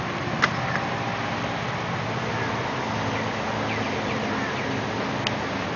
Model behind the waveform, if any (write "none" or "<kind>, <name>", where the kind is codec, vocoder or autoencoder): none